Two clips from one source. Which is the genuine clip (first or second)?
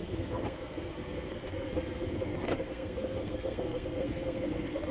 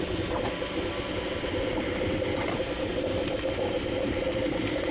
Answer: second